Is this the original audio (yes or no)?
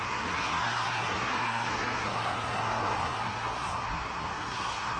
no